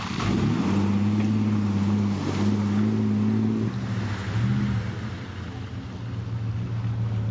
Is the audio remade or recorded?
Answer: recorded